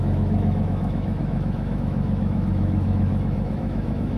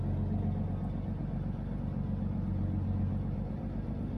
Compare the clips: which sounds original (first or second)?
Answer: second